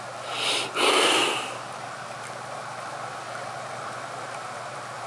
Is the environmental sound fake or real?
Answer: real